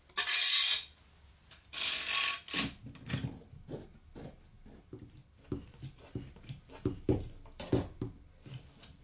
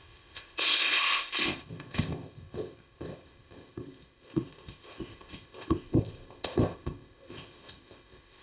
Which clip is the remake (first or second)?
second